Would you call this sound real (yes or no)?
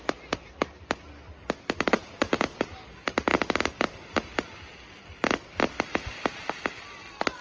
yes